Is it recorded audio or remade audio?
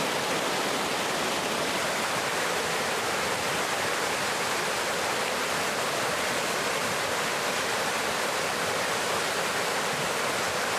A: recorded